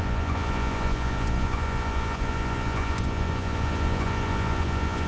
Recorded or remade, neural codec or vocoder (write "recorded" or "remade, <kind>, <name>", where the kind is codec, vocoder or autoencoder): remade, vocoder, Vocos